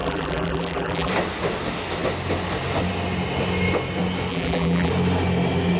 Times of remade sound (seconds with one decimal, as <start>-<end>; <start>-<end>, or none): 0.0-1.1; 4.3-4.9